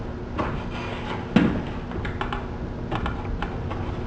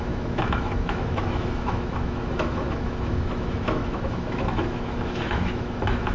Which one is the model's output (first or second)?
second